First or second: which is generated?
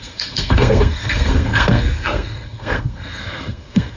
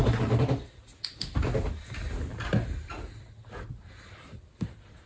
first